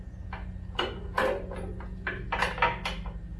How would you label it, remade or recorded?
recorded